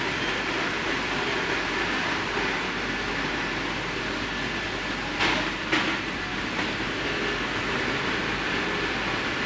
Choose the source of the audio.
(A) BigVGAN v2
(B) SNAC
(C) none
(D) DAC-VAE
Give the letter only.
C